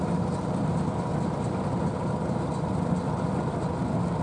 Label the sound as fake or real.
fake